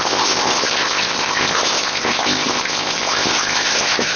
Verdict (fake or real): fake